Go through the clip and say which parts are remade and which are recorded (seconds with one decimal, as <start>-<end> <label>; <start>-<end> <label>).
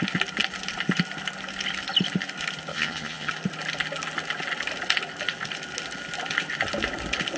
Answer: 0.0-2.7 recorded; 2.7-3.3 remade; 3.3-7.4 recorded